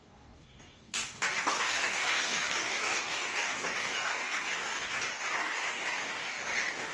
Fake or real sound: fake